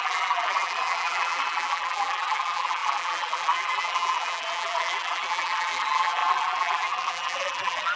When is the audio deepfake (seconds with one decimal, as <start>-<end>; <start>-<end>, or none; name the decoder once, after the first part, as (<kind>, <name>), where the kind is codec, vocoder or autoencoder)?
0.0-8.0 (vocoder, BigVGAN v2)